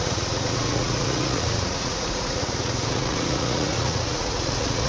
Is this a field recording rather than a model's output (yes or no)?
no